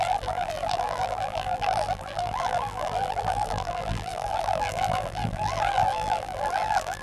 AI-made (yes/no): yes